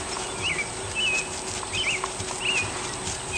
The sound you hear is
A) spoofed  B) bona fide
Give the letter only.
B